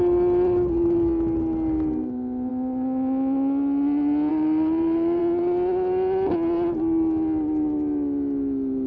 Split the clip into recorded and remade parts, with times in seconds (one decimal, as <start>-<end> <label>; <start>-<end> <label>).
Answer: 0.0-4.3 recorded; 4.3-5.2 remade; 5.2-8.9 recorded